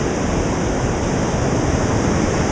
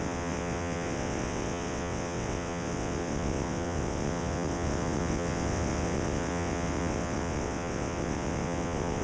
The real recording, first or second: first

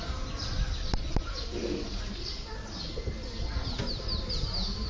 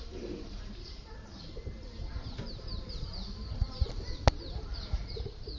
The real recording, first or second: first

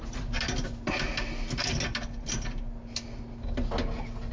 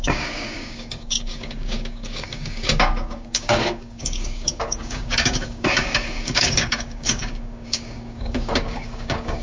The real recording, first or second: first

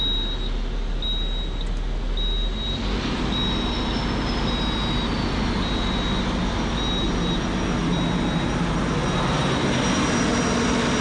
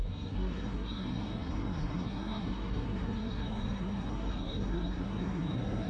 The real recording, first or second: first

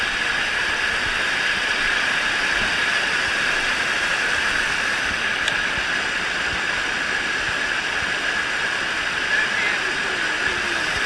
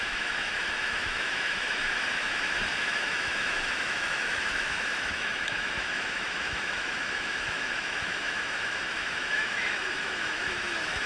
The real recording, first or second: first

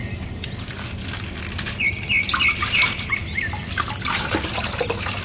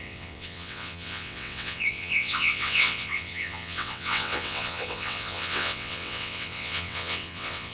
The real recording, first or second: first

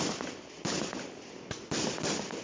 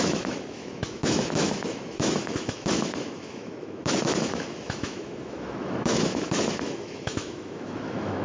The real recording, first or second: first